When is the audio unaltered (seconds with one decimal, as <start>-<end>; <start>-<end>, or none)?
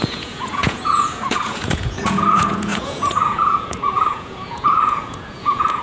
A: none